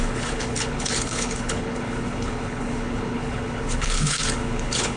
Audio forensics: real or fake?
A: fake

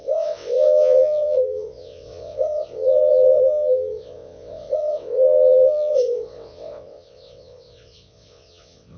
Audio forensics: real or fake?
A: fake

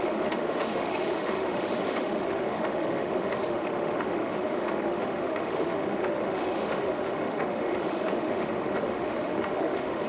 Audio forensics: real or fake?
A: fake